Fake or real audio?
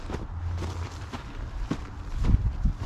real